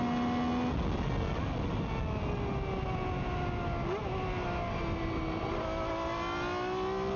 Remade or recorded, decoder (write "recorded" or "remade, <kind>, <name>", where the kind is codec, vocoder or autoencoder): recorded